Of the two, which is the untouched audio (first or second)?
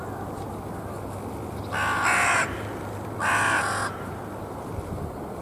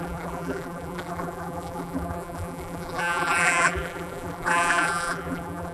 first